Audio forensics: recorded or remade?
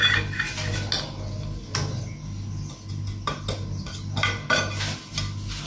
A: recorded